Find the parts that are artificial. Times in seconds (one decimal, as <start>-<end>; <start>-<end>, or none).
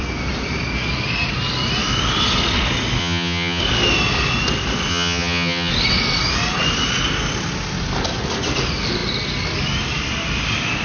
3.0-3.6; 4.9-5.7